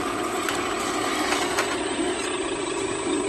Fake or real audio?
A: real